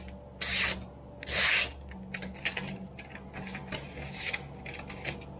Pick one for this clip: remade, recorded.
recorded